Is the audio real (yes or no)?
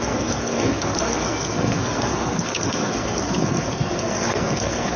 no